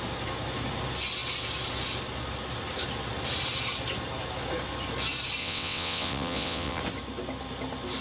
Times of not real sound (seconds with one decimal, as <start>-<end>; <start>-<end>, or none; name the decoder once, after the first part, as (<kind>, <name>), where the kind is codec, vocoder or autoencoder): 5.4-6.8 (vocoder, WaveNeXt)